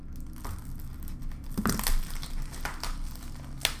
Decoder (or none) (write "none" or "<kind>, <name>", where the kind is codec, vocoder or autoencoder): none